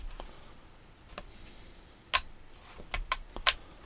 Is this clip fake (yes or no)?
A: no